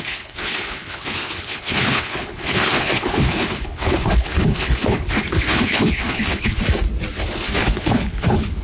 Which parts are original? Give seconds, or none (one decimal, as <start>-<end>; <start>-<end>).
6.6-7.1